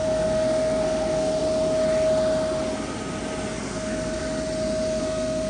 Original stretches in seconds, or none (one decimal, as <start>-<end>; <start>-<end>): 1.4-3.6; 4.2-5.0